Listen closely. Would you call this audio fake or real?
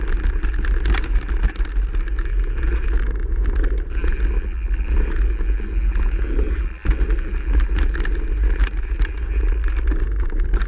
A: real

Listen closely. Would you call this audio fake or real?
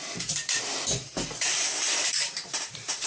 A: fake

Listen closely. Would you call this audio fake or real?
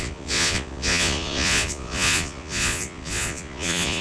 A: fake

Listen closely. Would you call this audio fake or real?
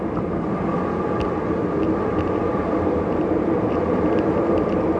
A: real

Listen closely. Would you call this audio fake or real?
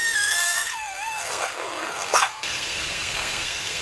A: fake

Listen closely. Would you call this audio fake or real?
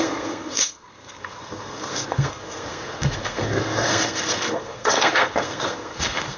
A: fake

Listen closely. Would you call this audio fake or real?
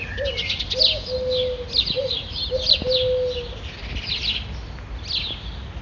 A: real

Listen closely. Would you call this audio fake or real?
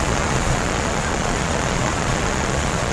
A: fake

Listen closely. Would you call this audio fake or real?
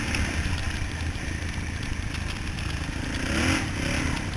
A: real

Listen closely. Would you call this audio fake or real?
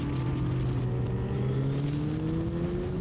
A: real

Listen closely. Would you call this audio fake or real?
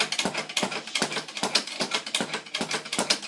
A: real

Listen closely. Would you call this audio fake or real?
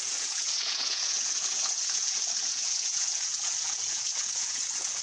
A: fake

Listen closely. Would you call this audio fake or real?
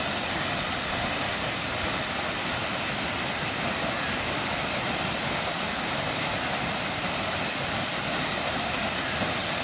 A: real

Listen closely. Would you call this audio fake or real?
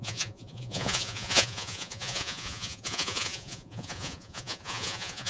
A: fake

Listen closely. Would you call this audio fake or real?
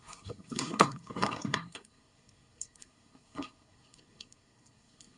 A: fake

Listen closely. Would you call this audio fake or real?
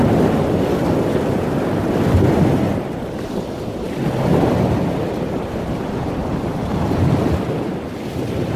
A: real